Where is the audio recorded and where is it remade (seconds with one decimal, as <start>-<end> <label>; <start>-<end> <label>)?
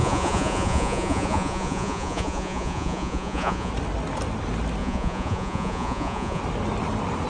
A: 0.0-3.7 remade; 3.7-4.8 recorded; 4.8-6.4 remade; 6.4-7.3 recorded